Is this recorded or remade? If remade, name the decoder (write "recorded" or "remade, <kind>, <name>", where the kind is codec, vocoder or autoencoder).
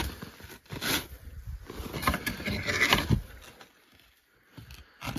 recorded